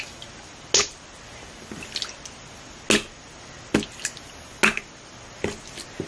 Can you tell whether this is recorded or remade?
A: recorded